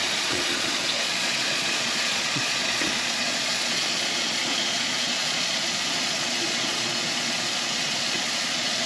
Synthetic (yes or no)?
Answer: yes